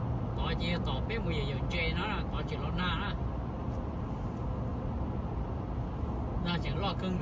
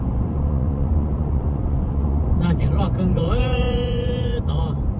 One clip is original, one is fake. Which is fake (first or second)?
second